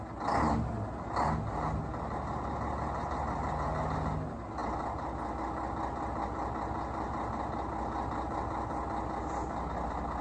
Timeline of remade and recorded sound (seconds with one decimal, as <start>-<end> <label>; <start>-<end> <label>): 0.0-10.2 recorded